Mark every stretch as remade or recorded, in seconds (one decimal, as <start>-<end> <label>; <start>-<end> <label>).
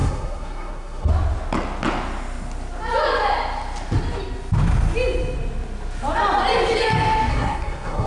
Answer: 0.0-1.1 remade; 1.1-7.3 recorded; 7.3-8.1 remade